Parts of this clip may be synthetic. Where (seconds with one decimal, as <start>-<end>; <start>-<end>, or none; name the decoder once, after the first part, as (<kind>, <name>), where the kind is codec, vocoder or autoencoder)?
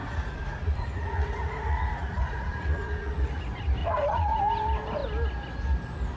0.0-3.4 (vocoder, Vocos); 3.8-4.4